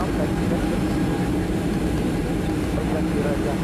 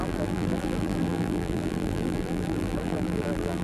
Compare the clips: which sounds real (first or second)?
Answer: first